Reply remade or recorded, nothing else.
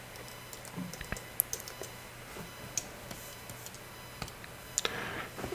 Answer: recorded